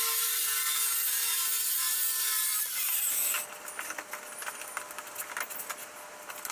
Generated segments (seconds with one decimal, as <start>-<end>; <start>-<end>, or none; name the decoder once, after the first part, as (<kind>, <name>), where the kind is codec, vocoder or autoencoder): none